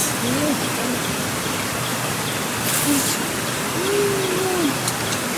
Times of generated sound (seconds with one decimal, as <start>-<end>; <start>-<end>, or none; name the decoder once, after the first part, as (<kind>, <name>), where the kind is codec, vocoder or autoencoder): 0.0-0.6 (vocoder, BigVGAN v2)